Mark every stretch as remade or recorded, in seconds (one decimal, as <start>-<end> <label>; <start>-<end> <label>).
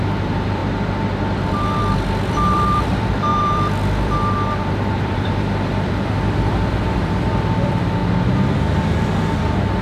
0.0-0.6 remade; 0.6-1.8 recorded; 1.8-8.0 remade; 8.0-8.6 recorded; 8.6-9.8 remade